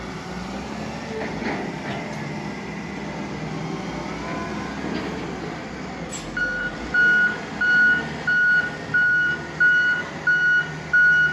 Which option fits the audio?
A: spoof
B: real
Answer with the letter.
B